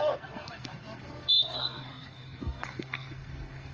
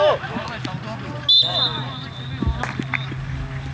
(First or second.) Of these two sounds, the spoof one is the first